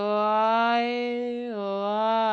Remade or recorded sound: recorded